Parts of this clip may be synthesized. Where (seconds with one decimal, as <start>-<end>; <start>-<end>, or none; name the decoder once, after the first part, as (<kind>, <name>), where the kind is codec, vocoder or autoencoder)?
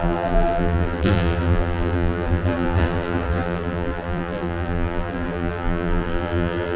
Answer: 0.0-6.8 (vocoder, BigVGAN v2)